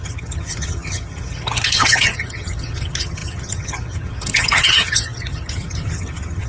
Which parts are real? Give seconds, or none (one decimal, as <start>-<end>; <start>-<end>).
none